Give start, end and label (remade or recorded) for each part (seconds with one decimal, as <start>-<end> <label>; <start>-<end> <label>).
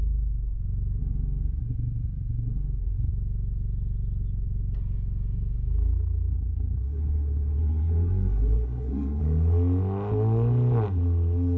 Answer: 0.0-1.0 recorded; 1.0-3.1 remade; 3.1-6.3 recorded; 6.3-9.2 remade; 9.2-11.6 recorded